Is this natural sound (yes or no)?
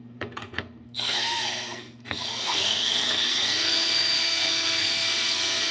no